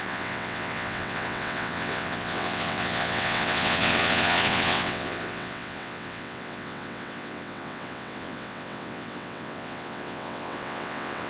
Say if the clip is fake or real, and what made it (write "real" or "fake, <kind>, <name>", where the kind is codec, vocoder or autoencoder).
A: fake, vocoder, WaveNeXt